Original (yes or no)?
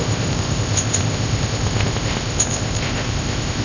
no